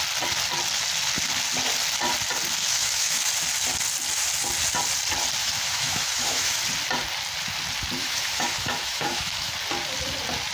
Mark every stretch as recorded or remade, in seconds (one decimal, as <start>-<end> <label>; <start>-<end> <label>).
0.0-2.6 recorded; 2.6-3.3 remade; 3.3-5.4 recorded; 5.4-6.6 remade; 6.6-8.0 recorded; 8.0-9.5 remade; 9.5-10.5 recorded